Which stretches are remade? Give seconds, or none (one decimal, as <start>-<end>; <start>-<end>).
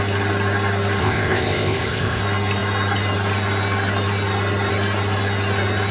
1.0-2.2